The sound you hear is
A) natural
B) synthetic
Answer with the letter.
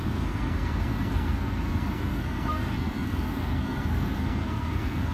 B